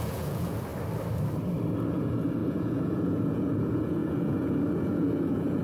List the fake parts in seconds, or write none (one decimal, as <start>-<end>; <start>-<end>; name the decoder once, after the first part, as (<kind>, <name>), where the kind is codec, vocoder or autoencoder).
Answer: 0.0-0.7 (vocoder, Vocos); 1.9-5.6